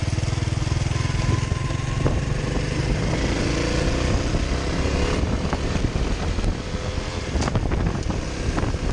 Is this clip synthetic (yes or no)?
no